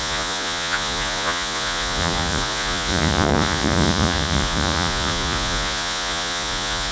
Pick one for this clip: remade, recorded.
remade